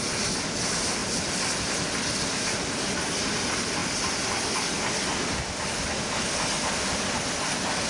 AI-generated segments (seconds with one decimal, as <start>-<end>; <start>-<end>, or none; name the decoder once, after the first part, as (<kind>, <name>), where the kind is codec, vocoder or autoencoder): none